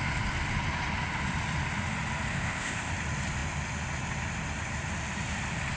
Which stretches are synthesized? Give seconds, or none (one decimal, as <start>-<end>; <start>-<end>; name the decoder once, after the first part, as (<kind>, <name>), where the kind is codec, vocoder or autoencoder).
2.3-2.9 (codec, ZipCodec)